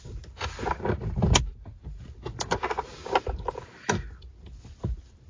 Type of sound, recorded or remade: recorded